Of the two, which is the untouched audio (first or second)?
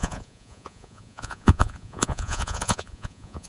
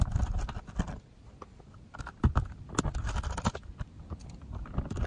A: second